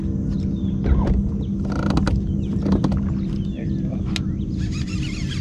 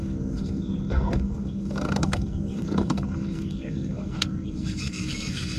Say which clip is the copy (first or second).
second